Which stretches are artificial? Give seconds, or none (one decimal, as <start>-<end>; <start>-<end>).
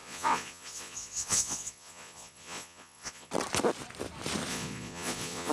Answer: 0.0-3.3; 4.5-5.5